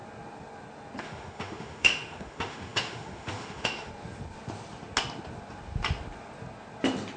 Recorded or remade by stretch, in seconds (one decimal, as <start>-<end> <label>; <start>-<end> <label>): 0.0-1.0 recorded; 1.0-3.9 remade; 3.9-7.2 recorded